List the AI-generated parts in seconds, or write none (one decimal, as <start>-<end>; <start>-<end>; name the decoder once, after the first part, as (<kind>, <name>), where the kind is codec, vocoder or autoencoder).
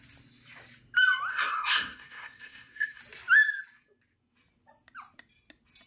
1.3-3.0 (codec, SNAC)